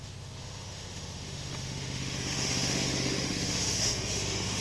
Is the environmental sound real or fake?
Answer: fake